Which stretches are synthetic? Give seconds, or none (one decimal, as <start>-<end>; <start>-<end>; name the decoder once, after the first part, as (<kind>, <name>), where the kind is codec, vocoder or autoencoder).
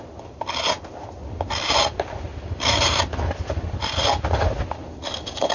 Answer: none